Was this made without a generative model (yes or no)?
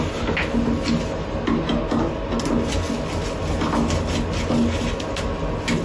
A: yes